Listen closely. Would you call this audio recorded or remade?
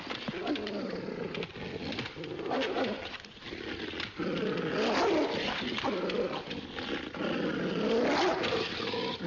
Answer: recorded